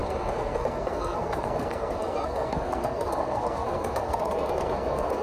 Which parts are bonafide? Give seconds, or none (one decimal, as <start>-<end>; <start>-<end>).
none